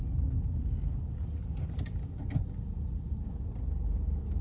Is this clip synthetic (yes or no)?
no